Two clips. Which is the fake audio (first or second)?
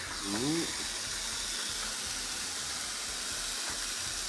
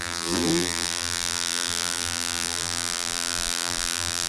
second